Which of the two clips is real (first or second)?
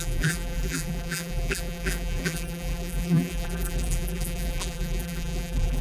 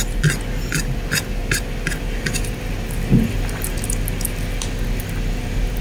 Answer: second